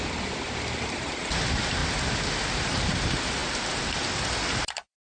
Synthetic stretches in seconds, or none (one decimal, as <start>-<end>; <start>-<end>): 0.0-1.8; 2.4-5.1